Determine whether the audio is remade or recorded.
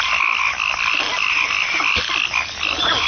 recorded